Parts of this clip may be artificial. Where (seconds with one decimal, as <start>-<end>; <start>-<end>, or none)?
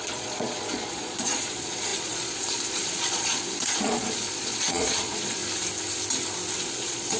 0.0-5.4; 6.6-7.2